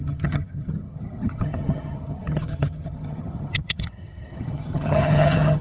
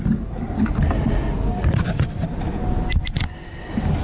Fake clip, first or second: first